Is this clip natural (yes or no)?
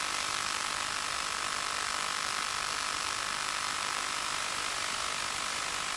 yes